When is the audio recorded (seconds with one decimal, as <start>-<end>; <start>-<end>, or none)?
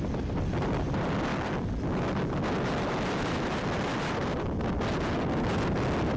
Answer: 0.0-6.2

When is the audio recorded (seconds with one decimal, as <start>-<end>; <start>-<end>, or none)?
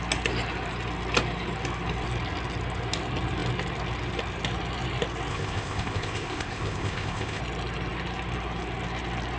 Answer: 0.0-5.3; 7.4-9.4